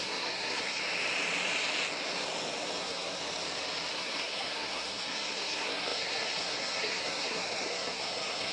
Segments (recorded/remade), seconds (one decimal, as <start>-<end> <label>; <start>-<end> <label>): 0.0-0.8 remade; 0.8-2.8 recorded; 2.8-3.2 remade; 3.2-3.9 recorded; 3.9-8.5 remade